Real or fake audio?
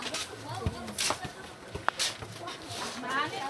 real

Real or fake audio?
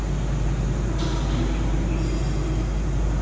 real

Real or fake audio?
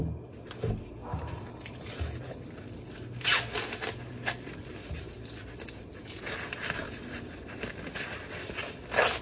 real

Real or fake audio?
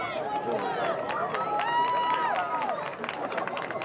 real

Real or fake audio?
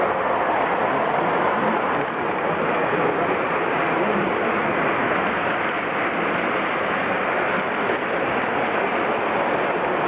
real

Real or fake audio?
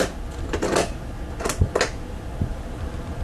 real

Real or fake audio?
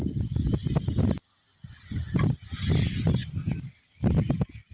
real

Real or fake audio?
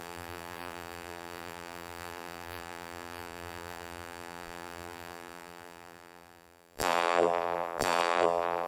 fake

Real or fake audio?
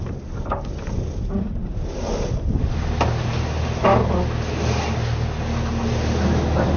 real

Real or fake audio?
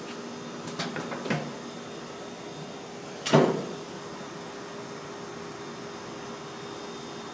real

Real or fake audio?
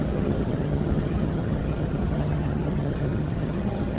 fake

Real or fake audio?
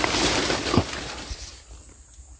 real